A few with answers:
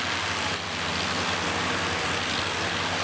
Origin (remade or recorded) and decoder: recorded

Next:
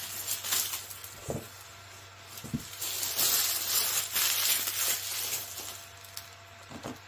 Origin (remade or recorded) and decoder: recorded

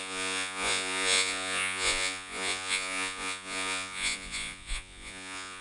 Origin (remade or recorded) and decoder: remade, vocoder, Vocos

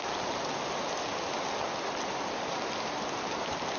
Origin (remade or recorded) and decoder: recorded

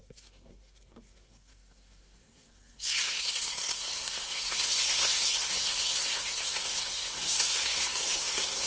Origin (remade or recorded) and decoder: remade, codec, SNAC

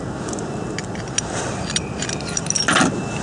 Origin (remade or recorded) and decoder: recorded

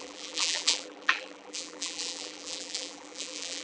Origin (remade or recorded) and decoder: remade, vocoder, BigVGAN v2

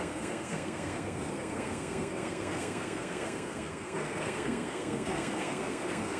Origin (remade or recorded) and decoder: remade, codec, SNAC